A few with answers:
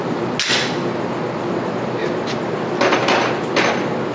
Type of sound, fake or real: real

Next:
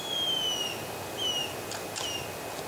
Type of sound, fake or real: real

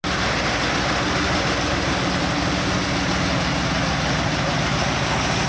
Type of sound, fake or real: real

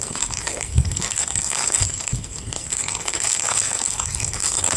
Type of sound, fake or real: fake